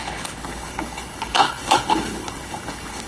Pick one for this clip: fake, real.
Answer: fake